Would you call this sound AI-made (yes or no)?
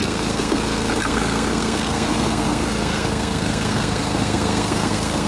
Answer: yes